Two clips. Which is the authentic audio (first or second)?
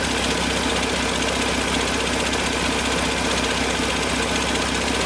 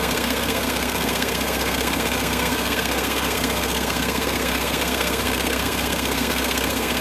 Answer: first